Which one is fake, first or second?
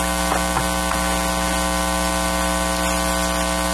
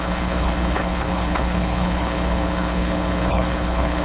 second